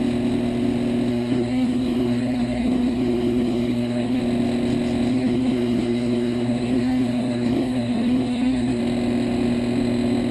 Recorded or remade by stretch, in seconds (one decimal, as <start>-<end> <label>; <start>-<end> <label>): 0.0-1.1 recorded; 1.1-4.2 remade; 4.2-5.1 recorded; 5.1-8.8 remade; 8.8-10.3 recorded